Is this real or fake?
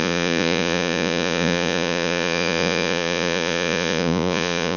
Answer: fake